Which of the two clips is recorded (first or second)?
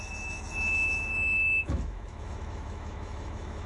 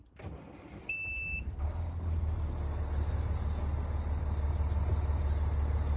second